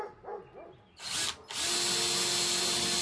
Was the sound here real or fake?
real